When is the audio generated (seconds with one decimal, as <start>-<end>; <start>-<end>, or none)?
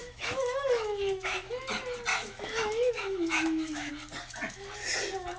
0.0-1.7; 2.1-3.9